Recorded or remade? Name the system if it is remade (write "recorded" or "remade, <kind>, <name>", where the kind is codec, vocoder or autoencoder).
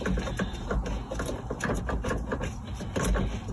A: recorded